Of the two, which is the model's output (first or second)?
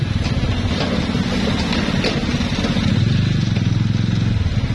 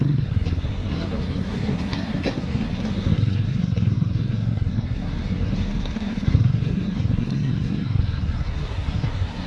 second